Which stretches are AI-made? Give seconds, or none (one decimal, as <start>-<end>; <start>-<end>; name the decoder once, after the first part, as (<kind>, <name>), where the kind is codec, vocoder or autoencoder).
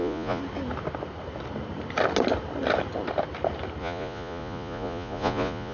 0.0-0.4 (vocoder, Vocos); 3.8-5.7